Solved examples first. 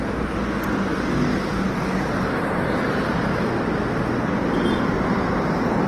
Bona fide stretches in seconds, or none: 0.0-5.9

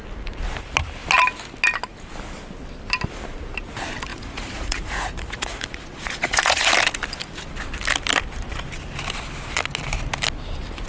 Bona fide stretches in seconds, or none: 0.0-4.1; 6.7-10.9

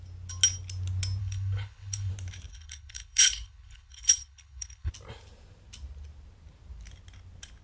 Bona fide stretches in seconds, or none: 0.0-1.2; 2.1-2.5; 4.9-7.6

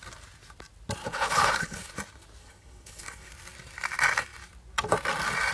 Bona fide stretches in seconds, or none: 0.0-1.0; 1.9-2.4; 3.3-5.5

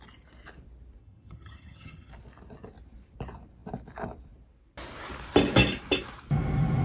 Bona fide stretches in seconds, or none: 0.0-1.0; 2.1-6.8

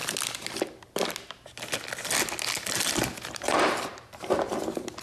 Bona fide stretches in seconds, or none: 0.0-3.0